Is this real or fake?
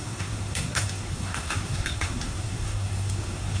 fake